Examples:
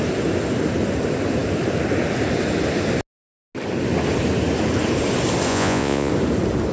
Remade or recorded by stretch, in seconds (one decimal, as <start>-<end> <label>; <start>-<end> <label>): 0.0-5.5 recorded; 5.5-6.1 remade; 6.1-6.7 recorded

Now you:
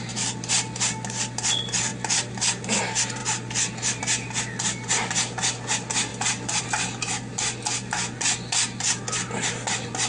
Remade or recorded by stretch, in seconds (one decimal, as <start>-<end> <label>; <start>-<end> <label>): 0.0-10.1 recorded

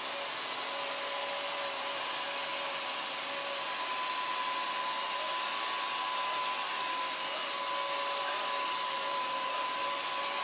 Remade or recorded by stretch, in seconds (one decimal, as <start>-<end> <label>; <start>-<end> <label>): 0.0-10.4 recorded